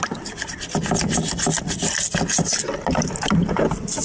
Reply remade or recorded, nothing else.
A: recorded